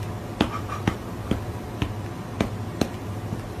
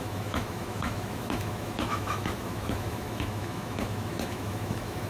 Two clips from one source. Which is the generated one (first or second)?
second